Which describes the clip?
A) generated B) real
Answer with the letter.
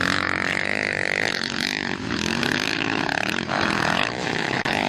A